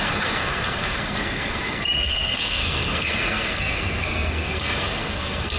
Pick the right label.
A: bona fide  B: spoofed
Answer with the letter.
B